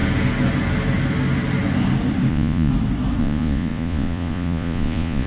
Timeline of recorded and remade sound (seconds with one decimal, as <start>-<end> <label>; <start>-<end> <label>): 0.0-2.3 recorded; 2.3-2.7 remade; 2.7-3.2 recorded; 3.2-5.3 remade